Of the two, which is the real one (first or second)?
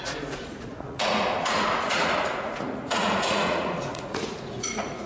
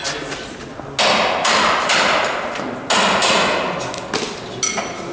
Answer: second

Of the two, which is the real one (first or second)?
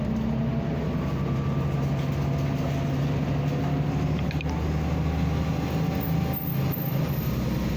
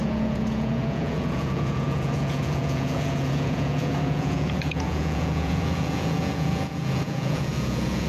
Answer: first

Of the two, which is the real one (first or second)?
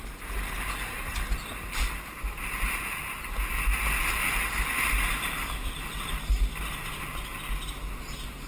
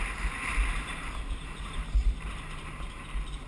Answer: first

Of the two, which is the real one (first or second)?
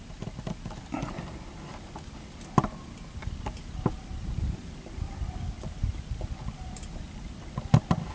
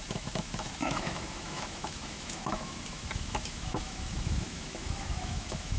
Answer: first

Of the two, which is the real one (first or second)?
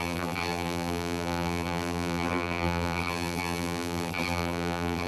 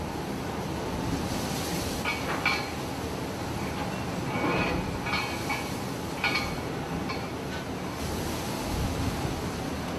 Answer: second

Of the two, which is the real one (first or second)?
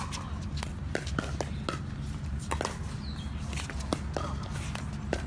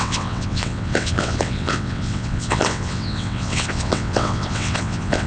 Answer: first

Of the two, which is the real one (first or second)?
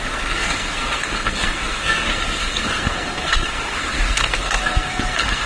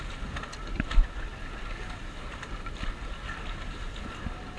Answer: second